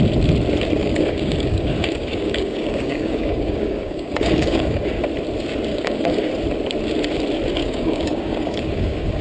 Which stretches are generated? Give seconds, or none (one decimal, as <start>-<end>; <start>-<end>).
0.8-5.0; 5.7-6.3; 7.6-9.2